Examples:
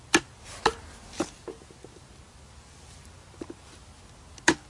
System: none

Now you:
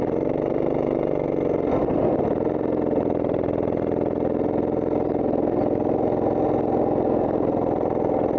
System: none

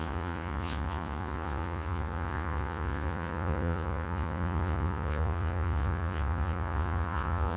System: vocoder, Vocos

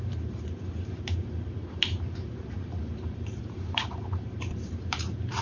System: vocoder, BigVGAN v2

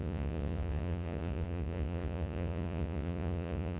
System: vocoder, Vocos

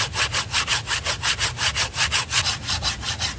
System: none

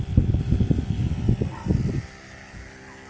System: none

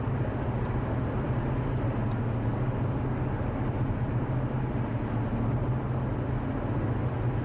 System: none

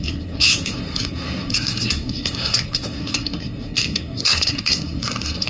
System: codec, SNAC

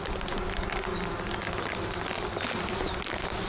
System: none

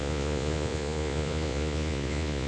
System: vocoder, Vocos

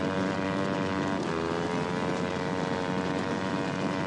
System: none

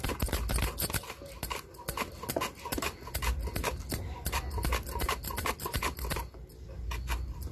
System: none